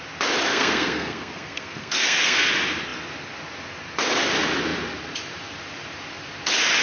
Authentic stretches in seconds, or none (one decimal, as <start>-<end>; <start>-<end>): 0.0-0.5; 2.5-6.8